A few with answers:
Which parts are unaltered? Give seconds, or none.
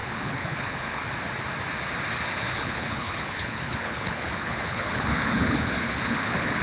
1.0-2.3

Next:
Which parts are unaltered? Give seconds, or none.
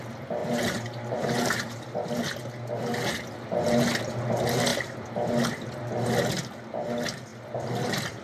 0.0-0.4; 2.1-8.2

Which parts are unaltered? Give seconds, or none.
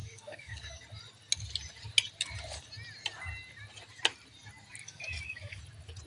0.8-4.8; 5.6-6.1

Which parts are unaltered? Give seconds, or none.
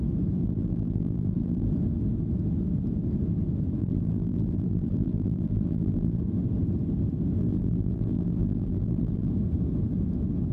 0.0-0.4; 1.7-3.8; 6.2-7.4; 9.3-10.5